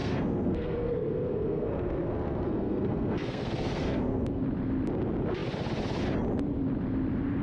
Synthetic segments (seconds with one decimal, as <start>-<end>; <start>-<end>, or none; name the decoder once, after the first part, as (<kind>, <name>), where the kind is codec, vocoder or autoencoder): 0.0-4.4 (codec, SNAC)